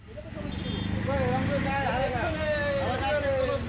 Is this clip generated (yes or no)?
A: no